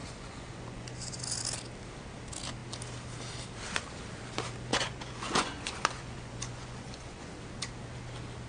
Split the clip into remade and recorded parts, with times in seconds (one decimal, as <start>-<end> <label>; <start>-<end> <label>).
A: 0.0-1.2 remade; 1.2-4.7 recorded; 4.7-7.3 remade; 7.3-8.5 recorded